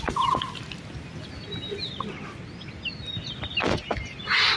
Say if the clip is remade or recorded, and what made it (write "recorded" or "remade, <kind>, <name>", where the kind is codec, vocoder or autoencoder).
recorded